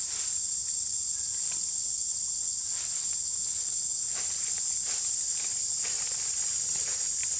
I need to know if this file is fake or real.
real